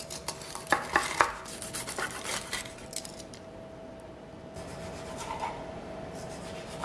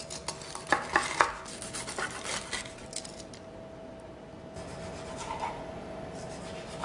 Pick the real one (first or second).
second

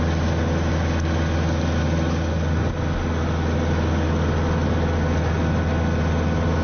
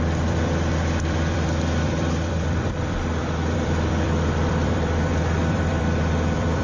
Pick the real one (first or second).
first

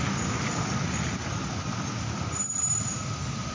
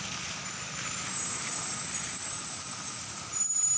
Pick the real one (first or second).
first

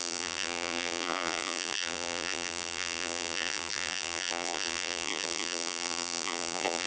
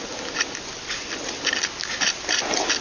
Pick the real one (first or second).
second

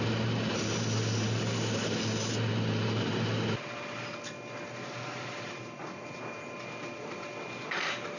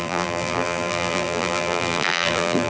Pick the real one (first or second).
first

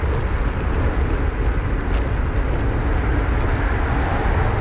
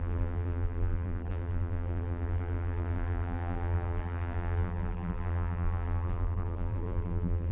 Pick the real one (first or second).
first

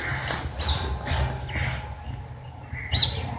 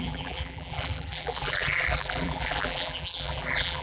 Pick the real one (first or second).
first